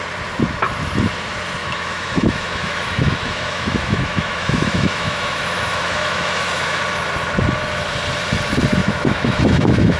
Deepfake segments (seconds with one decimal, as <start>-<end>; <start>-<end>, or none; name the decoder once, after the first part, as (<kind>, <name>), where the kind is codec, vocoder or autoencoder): 1.6-6.8 (autoencoder, DAC-VAE); 8.8-10.0